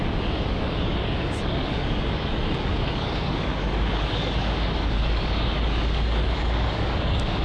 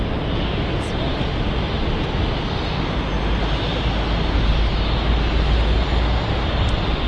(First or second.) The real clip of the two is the second